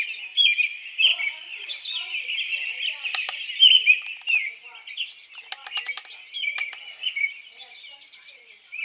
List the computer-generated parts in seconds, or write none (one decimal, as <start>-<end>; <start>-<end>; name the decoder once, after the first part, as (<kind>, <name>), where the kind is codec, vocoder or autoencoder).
none